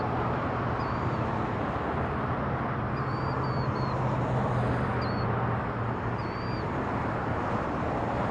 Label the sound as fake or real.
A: real